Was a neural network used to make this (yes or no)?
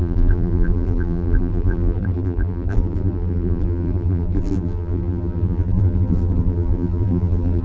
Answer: yes